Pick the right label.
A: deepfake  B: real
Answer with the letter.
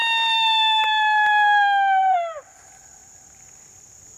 B